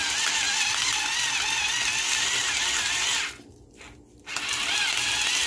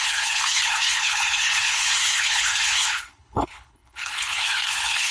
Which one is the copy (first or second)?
second